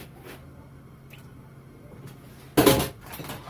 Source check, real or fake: real